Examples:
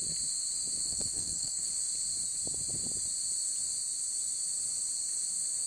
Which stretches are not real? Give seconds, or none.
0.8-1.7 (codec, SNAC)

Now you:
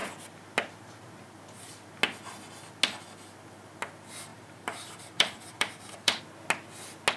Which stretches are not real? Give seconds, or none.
4.3-6.2 (vocoder, BigVGAN v2)

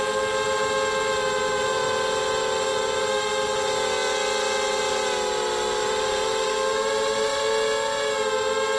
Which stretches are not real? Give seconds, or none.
none

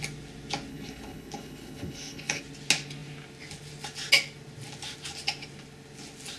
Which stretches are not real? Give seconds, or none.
0.7-2.4 (codec, HILCodec)

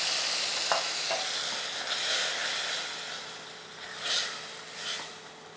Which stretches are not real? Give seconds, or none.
none

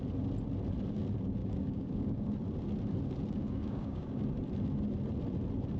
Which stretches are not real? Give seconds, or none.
1.4-2.3 (codec, DAC); 3.4-4.2

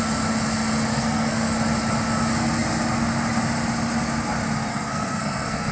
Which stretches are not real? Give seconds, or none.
0.9-1.5 (codec, SNAC); 4.7-5.7